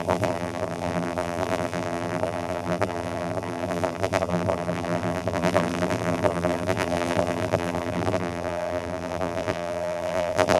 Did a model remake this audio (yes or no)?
yes